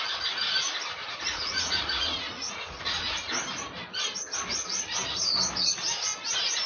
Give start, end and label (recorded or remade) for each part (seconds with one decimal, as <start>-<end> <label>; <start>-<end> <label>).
0.0-1.0 recorded; 1.0-3.4 remade; 3.4-6.7 recorded